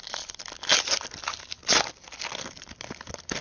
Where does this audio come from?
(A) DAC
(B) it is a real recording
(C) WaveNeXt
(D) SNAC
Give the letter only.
B